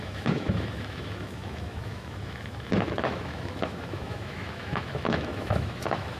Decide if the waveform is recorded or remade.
remade